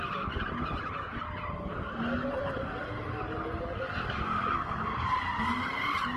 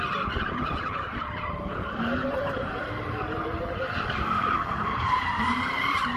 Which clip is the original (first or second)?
first